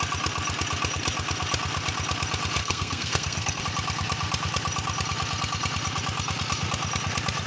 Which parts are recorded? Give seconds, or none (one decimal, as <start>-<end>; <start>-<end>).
0.0-2.6; 3.6-7.5